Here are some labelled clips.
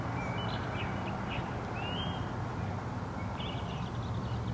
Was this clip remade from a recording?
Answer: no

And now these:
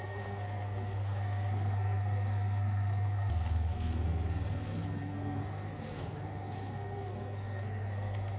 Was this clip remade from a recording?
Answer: yes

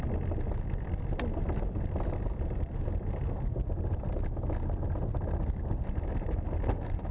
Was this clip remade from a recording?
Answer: no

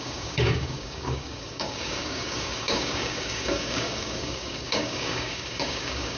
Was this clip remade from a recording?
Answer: yes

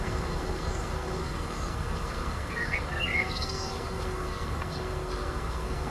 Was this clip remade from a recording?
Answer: yes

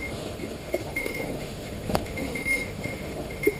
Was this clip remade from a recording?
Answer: yes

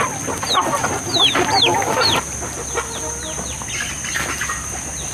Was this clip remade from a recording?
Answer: no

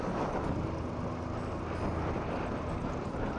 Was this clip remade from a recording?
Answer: no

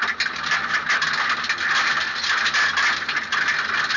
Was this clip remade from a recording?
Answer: no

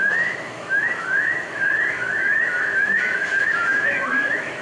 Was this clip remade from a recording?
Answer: yes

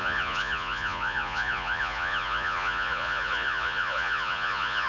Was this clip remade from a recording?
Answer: yes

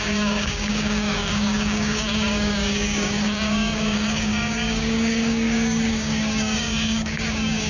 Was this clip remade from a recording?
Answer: yes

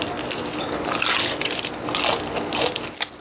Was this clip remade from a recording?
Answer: no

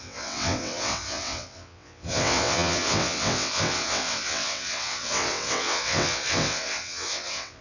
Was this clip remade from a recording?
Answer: yes